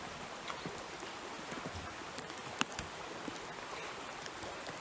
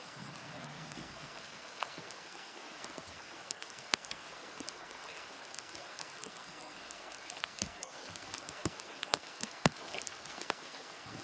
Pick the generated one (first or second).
second